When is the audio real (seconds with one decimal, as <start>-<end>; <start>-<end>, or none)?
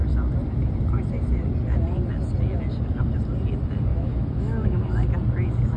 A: 0.0-3.9; 4.9-5.8